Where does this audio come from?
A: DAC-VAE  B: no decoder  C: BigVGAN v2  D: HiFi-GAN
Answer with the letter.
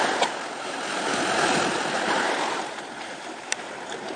C